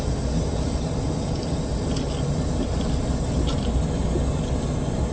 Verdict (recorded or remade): recorded